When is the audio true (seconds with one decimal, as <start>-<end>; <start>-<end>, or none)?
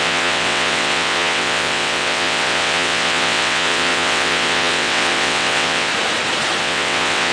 5.9-6.6